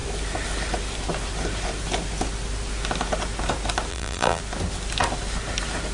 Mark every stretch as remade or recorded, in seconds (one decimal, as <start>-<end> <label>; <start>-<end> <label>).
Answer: 0.0-3.9 recorded; 3.9-4.4 remade; 4.4-5.9 recorded

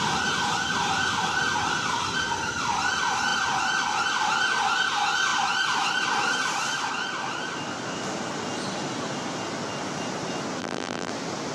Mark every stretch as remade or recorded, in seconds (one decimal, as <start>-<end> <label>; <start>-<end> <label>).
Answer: 0.0-10.6 recorded; 10.6-11.1 remade; 11.1-11.5 recorded

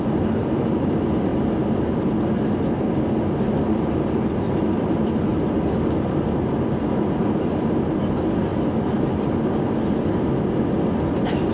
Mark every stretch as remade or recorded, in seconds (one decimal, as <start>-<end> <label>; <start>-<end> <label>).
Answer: 0.0-11.5 recorded

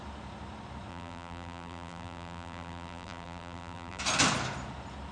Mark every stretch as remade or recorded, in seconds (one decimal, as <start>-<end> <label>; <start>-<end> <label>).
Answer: 0.0-0.9 recorded; 0.9-4.0 remade; 4.0-5.1 recorded